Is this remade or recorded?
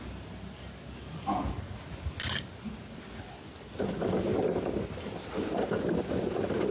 recorded